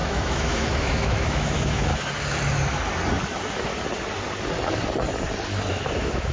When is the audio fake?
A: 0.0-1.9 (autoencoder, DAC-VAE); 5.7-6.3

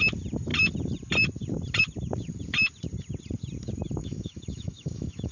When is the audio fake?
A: 4.0-5.3 (autoencoder, DAC-VAE)

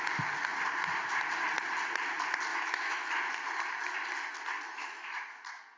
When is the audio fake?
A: 2.5-3.1 (autoencoder, DAC-VAE); 4.7-5.2

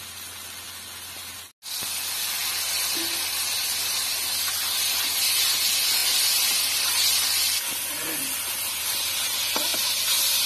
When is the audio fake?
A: none

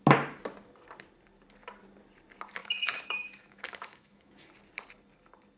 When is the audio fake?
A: 2.6-4.5 (autoencoder, DAC-VAE)